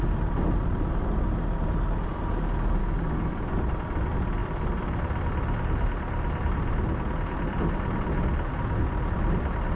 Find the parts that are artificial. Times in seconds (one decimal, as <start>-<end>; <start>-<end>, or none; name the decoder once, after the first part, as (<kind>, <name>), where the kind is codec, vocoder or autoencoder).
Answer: 2.8-3.3 (codec, DAC)

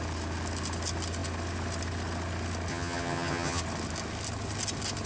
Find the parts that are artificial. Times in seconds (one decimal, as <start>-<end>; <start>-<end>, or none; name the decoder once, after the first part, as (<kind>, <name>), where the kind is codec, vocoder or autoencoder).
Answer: 2.7-3.6 (vocoder, HiFi-GAN)